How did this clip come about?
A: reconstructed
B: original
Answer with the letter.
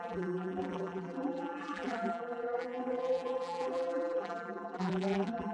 A